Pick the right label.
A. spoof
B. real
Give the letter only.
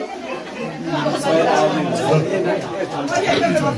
B